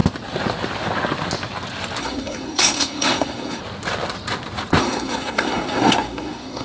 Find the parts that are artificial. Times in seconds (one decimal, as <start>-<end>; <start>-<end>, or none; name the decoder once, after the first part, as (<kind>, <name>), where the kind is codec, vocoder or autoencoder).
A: 2.0-3.6 (codec, SNAC); 4.8-6.6